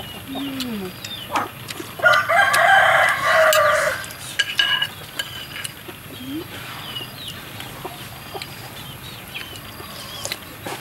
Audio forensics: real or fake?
real